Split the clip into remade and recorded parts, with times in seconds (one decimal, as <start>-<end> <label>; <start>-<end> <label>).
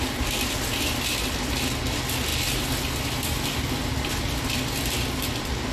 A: 0.0-5.7 recorded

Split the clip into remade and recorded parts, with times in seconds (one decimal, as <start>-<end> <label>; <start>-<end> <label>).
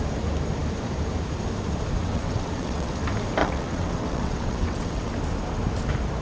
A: 0.0-2.0 recorded; 2.0-2.9 remade; 2.9-3.4 recorded; 3.4-5.1 remade; 5.1-6.2 recorded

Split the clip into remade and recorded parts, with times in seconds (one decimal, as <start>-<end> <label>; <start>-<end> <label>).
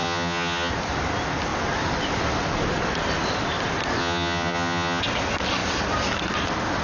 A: 0.0-0.7 remade; 0.7-4.0 recorded; 4.0-5.0 remade; 5.0-6.8 recorded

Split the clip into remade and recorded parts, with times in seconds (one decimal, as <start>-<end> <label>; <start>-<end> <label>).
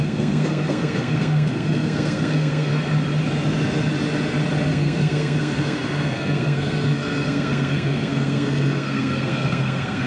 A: 0.0-2.7 remade; 2.7-4.7 recorded; 4.7-10.1 remade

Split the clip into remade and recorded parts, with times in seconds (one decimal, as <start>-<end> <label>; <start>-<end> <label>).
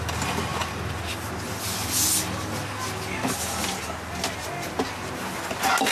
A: 0.0-5.9 recorded